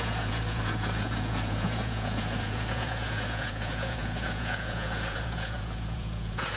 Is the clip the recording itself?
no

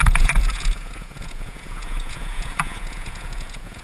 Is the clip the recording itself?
no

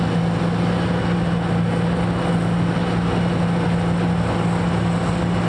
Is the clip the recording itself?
yes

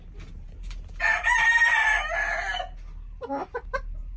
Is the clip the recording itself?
yes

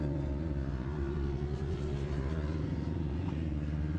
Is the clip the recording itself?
no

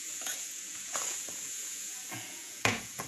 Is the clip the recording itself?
no